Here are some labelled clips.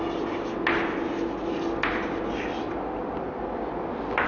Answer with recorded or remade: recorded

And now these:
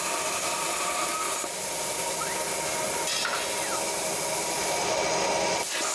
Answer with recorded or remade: recorded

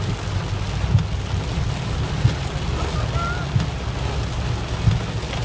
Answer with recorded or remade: recorded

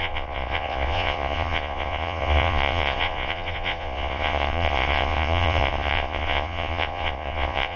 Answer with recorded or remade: remade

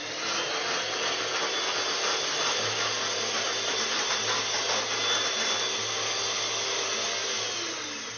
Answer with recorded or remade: recorded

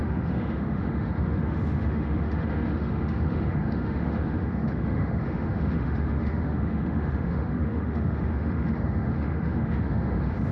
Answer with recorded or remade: remade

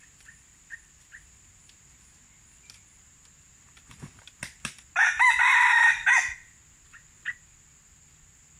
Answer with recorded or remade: recorded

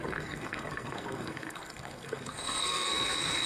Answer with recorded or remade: remade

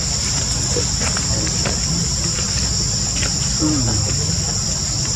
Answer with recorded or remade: recorded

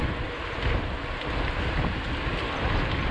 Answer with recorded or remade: recorded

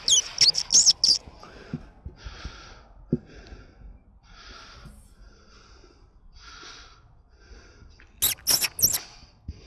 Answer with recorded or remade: recorded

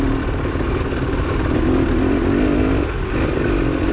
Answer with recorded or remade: recorded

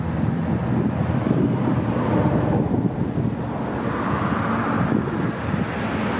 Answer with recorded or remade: recorded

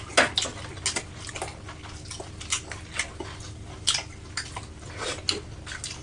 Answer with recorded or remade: recorded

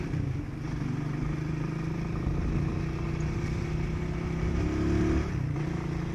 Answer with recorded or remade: recorded